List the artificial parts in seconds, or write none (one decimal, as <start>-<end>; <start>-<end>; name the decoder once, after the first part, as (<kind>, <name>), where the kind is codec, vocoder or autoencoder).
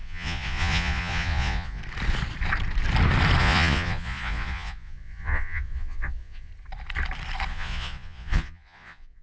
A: 0.0-1.8 (vocoder, Vocos); 3.4-6.5; 7.5-9.2